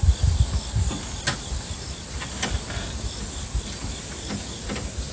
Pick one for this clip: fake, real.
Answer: real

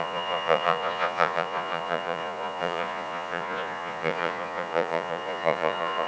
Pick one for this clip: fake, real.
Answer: fake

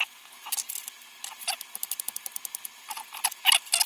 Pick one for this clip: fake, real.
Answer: real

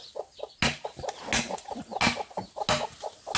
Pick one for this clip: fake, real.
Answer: real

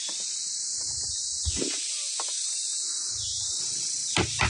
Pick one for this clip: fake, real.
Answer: real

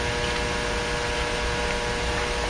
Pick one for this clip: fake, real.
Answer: real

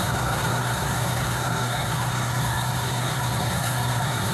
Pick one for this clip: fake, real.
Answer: fake